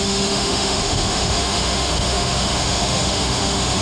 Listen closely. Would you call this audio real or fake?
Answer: fake